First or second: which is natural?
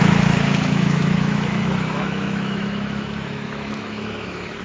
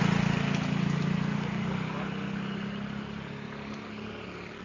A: second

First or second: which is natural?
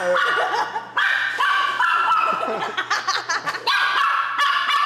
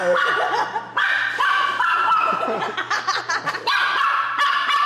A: first